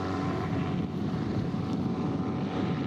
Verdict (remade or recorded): remade